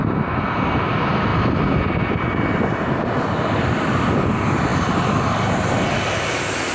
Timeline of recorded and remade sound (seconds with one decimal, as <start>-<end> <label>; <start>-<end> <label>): 0.0-4.7 remade; 4.7-6.7 recorded